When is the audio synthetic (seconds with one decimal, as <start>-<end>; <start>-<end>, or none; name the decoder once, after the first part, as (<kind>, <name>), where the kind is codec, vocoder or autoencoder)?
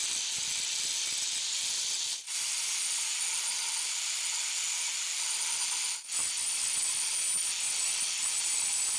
none